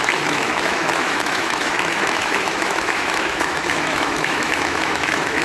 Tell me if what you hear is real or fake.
fake